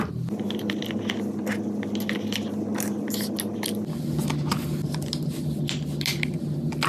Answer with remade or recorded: recorded